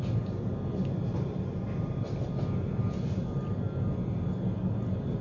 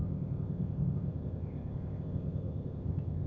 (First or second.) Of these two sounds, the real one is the first